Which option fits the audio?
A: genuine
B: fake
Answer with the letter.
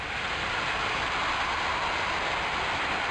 A